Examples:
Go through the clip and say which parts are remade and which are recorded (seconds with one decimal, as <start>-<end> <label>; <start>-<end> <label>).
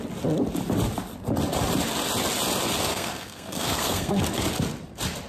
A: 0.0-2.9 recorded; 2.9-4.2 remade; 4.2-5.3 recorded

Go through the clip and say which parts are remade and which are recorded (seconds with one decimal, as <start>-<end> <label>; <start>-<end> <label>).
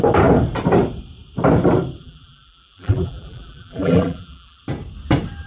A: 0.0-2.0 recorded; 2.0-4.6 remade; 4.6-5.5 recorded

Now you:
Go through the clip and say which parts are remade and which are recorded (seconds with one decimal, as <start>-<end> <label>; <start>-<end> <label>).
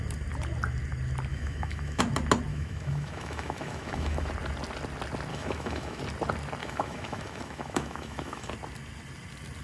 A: 0.0-1.3 recorded; 1.3-2.0 remade; 2.0-2.5 recorded; 2.5-4.3 remade; 4.3-5.3 recorded; 5.3-6.0 remade; 6.0-6.6 recorded; 6.6-8.5 remade; 8.5-9.6 recorded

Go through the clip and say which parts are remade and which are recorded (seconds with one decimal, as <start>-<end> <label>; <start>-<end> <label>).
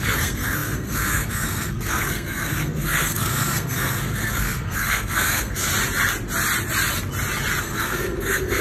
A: 0.0-5.7 remade; 5.7-7.6 recorded; 7.6-8.6 remade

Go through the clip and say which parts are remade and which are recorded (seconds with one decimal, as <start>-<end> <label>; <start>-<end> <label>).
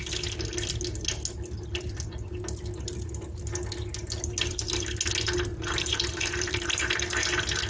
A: 0.0-5.5 recorded; 5.5-6.7 remade; 6.7-7.7 recorded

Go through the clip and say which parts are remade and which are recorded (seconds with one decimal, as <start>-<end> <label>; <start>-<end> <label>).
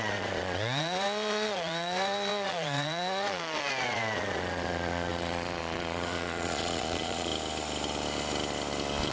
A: 0.0-7.3 remade; 7.3-9.1 recorded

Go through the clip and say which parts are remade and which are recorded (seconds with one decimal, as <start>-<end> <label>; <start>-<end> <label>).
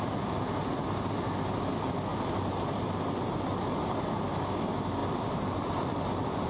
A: 0.0-6.5 recorded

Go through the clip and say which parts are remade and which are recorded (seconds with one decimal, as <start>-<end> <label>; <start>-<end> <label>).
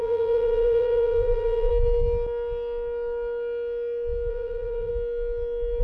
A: 0.0-1.7 remade; 1.7-4.3 recorded; 4.3-4.9 remade; 4.9-5.8 recorded